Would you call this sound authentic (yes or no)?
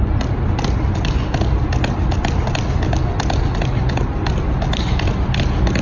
yes